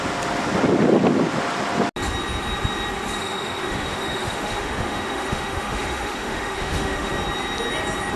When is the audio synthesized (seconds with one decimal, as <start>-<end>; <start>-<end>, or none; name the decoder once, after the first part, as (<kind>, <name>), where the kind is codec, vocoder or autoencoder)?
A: 3.2-7.1 (autoencoder, DAC-VAE)